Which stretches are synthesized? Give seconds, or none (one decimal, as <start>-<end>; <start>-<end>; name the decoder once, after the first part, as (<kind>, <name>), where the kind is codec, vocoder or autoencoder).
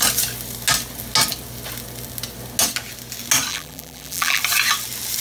3.5-4.4 (vocoder, BigVGAN v2)